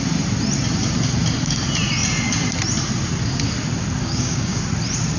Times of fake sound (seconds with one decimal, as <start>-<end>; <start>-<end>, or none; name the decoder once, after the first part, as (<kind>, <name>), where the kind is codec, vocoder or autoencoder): 4.0-4.6 (codec, DAC)